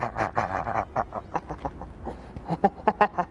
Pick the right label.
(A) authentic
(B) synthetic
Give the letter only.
A